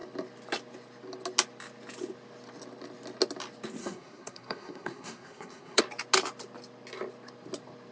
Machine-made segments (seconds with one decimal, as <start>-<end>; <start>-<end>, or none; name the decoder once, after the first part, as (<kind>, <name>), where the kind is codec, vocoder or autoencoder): 3.8-5.8 (codec, SNAC)